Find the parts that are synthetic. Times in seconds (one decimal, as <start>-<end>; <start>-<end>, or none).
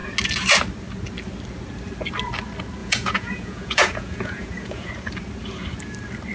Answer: 2.8-4.9